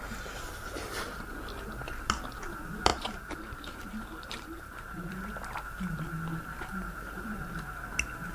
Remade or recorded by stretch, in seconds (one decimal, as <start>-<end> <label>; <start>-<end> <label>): 0.0-2.9 recorded; 2.9-5.1 remade; 5.1-6.7 recorded; 6.7-7.4 remade; 7.4-8.3 recorded